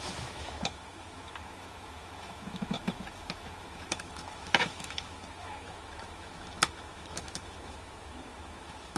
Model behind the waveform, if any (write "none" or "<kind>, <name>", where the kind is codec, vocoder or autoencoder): autoencoder, DAC-VAE